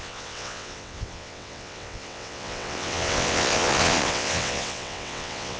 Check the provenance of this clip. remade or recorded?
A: remade